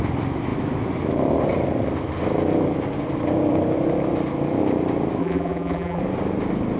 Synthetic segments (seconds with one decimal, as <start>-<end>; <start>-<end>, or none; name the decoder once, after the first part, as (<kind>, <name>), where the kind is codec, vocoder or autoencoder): 5.2-6.0 (vocoder, BigVGAN v2)